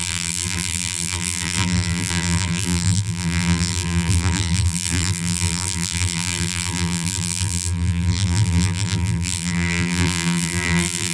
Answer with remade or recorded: remade